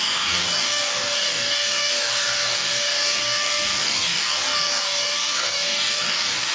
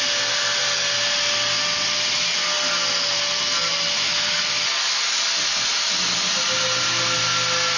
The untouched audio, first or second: second